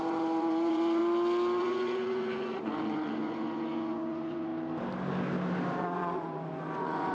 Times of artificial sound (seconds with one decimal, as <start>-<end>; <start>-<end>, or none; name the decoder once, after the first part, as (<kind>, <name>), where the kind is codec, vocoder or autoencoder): 0.0-1.0 (vocoder, Vocos); 1.6-4.5; 5.8-7.1